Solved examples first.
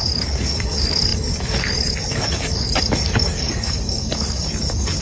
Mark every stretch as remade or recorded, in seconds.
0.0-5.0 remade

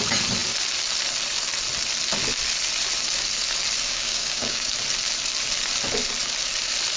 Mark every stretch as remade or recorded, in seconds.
0.0-3.9 recorded; 3.9-4.7 remade; 4.7-7.0 recorded

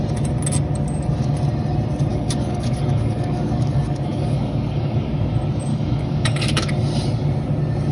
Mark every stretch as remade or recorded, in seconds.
0.0-2.1 recorded; 2.1-5.1 remade; 5.1-5.7 recorded; 5.7-6.7 remade; 6.7-7.9 recorded

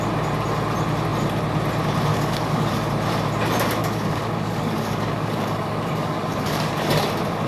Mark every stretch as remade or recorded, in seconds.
0.0-2.1 recorded; 2.1-2.9 remade; 2.9-3.8 recorded; 3.8-7.0 remade; 7.0-7.5 recorded

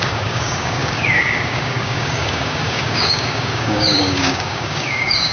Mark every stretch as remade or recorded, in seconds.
0.0-5.3 remade

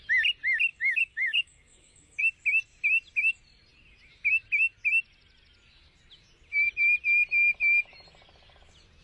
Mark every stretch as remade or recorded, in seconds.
0.0-0.7 recorded; 0.7-2.2 remade; 2.2-9.0 recorded

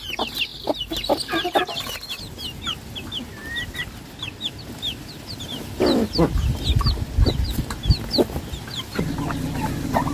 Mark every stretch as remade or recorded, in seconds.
0.0-10.1 recorded

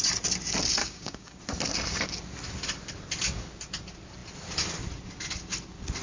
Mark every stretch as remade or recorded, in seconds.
0.0-0.8 recorded; 0.8-1.4 remade; 1.4-6.0 recorded